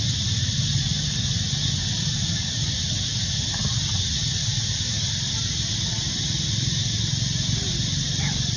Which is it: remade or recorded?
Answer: recorded